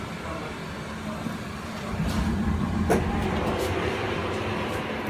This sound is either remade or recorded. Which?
remade